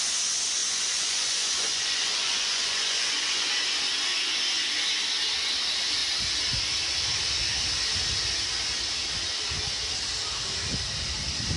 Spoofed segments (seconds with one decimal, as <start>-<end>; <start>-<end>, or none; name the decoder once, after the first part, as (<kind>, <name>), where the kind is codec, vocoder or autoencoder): 0.6-3.5 (vocoder, Vocos)